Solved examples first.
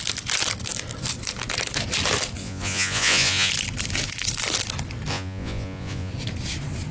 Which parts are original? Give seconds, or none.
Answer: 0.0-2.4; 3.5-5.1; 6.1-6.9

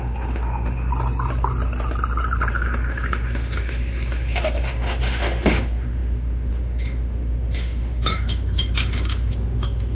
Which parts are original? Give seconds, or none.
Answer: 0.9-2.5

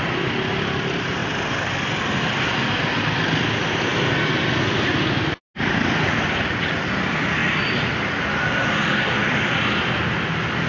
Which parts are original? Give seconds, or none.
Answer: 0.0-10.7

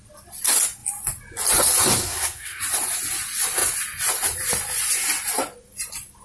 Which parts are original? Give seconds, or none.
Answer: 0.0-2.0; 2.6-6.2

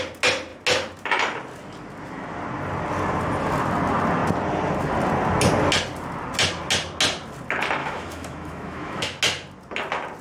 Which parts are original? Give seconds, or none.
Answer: 0.0-7.8; 9.2-10.2

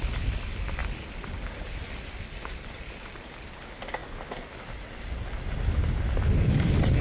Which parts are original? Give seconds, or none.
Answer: 0.0-7.0

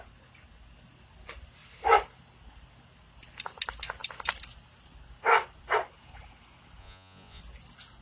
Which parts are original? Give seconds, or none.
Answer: 0.0-6.8; 7.4-8.0

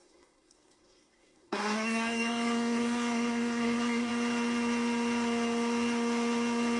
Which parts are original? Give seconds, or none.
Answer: 4.1-6.8